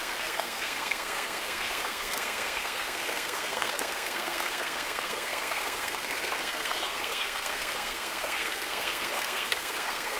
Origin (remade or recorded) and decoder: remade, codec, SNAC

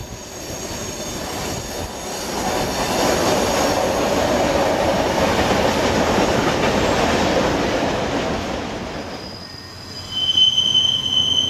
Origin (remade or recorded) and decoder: recorded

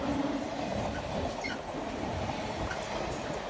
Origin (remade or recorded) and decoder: recorded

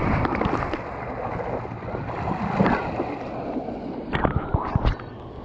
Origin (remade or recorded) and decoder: recorded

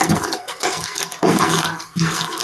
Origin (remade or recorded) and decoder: remade, codec, SNAC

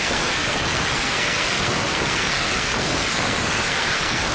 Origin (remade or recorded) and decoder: remade, codec, SNAC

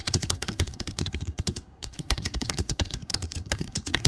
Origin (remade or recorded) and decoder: remade, codec, SNAC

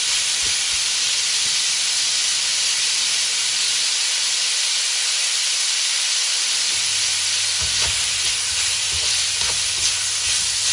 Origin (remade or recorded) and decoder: recorded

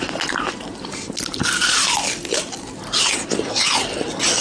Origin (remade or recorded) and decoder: recorded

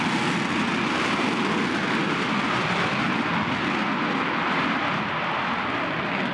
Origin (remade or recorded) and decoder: recorded